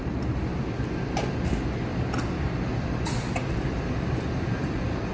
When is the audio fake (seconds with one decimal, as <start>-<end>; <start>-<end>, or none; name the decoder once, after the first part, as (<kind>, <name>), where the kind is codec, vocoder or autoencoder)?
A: 1.9-5.1 (vocoder, BigVGAN v2)